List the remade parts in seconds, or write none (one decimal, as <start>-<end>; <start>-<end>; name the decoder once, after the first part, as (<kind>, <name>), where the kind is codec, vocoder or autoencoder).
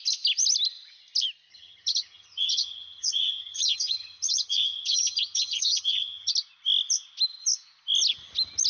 1.5-6.3 (vocoder, HiFi-GAN)